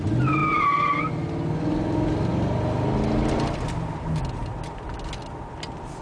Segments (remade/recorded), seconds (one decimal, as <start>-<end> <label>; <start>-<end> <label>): 0.0-6.0 recorded